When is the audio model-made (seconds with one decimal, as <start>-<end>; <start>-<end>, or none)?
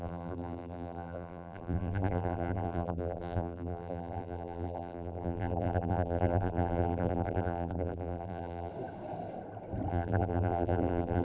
0.0-8.7; 9.9-11.2